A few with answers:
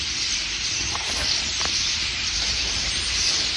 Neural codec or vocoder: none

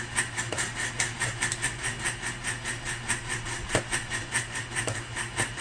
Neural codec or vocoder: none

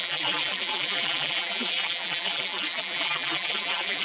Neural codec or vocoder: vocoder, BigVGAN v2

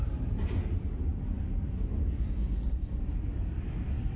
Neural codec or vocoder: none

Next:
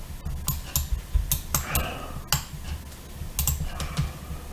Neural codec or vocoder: none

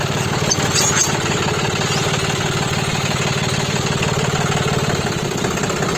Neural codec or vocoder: none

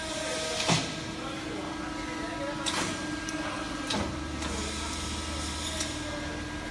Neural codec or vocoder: none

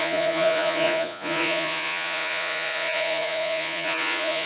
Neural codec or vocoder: vocoder, Vocos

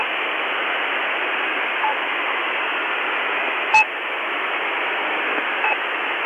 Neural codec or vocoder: none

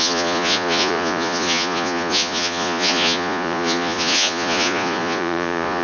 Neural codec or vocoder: vocoder, Vocos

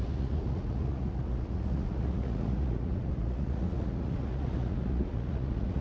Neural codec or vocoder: vocoder, Vocos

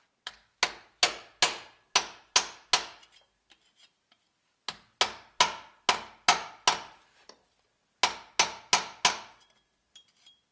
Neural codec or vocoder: none